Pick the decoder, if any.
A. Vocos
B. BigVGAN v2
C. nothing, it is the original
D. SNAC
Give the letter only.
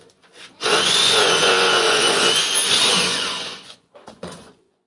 A